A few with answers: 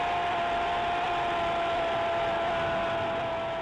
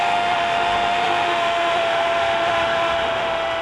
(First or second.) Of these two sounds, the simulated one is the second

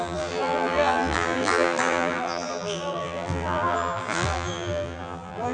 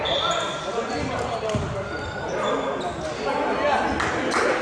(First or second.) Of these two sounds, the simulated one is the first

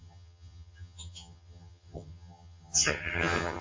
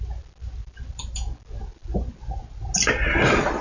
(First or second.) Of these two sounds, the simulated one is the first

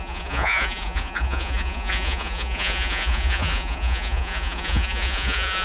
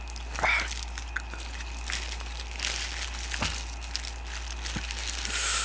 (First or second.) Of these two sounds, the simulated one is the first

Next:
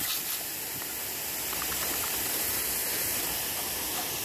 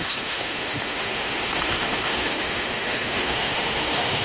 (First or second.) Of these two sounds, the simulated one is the second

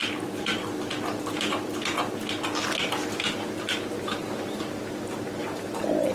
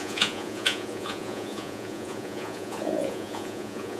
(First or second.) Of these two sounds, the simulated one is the second